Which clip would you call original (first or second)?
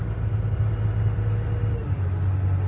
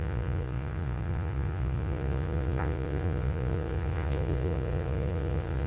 first